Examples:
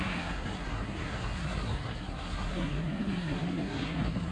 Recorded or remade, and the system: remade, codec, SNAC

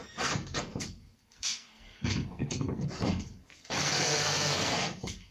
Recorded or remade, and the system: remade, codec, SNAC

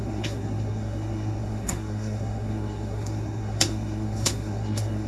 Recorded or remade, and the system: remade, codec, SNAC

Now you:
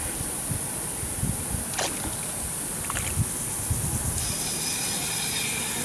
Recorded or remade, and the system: recorded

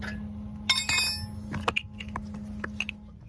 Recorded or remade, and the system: recorded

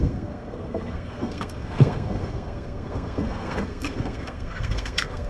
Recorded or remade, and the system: remade, codec, SNAC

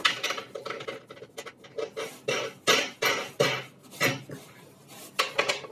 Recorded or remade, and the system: recorded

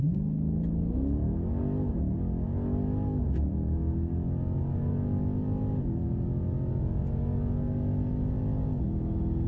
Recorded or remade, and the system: recorded